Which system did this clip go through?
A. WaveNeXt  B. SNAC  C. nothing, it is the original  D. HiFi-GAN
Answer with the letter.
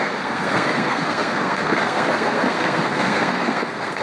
B